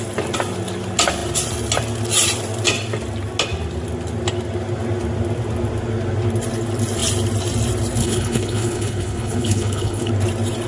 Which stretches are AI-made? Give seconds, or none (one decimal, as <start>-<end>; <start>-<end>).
8.0-10.1

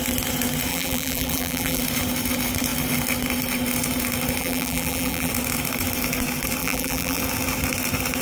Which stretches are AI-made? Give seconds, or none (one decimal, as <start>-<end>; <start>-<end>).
0.7-1.8; 4.4-5.3; 6.6-7.2